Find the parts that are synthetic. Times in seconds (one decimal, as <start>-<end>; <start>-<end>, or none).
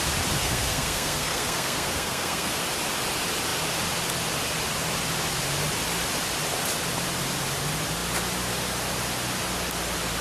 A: 0.4-2.6